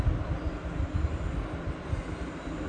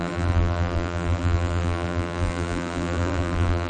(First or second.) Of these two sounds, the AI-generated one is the second